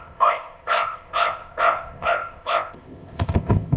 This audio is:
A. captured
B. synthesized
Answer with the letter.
B